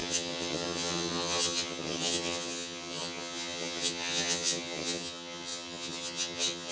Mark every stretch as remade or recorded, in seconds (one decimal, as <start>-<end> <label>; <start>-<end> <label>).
0.0-6.7 remade